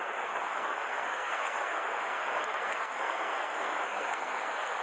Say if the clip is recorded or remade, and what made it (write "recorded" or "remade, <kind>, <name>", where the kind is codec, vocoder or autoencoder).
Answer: remade, codec, SNAC